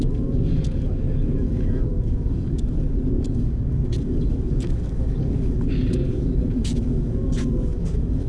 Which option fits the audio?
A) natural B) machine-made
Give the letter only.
B